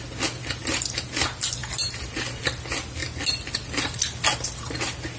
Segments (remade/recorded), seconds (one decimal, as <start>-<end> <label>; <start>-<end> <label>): 0.0-5.2 recorded